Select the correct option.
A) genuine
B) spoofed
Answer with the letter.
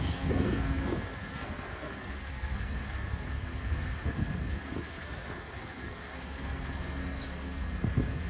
B